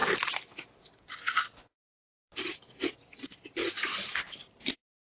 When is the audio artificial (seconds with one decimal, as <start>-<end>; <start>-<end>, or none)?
3.6-5.0